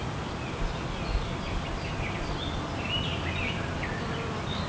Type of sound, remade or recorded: recorded